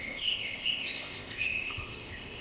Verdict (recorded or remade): remade